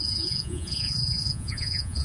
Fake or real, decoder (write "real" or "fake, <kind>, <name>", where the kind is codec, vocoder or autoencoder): fake, vocoder, Vocos